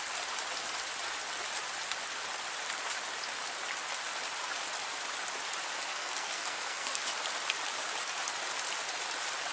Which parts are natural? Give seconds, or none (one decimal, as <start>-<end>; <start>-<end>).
0.0-5.9; 7.0-9.5